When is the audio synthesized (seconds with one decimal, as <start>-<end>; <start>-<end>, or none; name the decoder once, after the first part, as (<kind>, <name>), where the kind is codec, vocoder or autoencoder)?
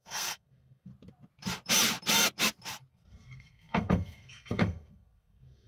0.0-0.9 (codec, SNAC); 2.9-5.7